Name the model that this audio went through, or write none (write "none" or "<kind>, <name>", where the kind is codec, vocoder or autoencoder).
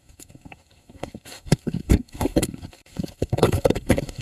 codec, SNAC